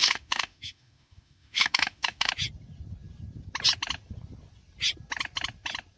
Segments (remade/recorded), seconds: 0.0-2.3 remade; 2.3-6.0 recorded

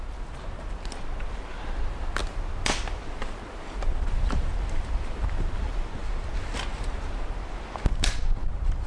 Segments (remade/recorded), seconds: 0.0-8.9 recorded

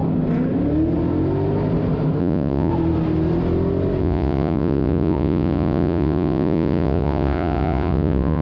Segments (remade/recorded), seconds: 0.0-2.2 recorded; 2.2-2.7 remade; 2.7-4.0 recorded; 4.0-8.4 remade

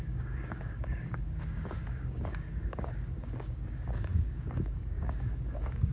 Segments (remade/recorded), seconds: 0.0-5.9 remade

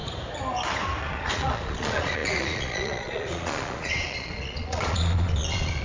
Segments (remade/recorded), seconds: 0.0-1.0 recorded; 1.0-5.8 remade

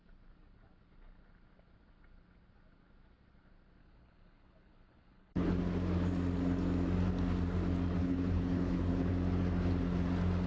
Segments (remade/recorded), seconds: 0.0-3.8 recorded; 3.8-5.5 remade; 5.5-8.0 recorded; 8.0-9.1 remade; 9.1-10.5 recorded

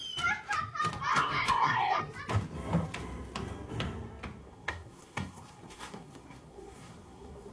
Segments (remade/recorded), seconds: 0.0-1.1 recorded; 1.1-2.0 remade; 2.0-4.4 recorded; 4.4-7.5 remade